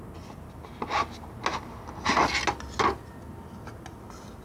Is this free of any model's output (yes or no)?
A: yes